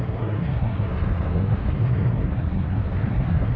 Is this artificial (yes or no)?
yes